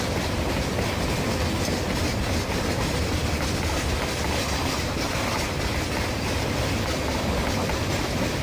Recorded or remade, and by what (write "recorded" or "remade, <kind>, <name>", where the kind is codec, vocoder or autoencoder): recorded